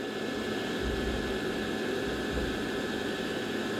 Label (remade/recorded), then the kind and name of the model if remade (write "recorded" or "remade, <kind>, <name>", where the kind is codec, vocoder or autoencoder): recorded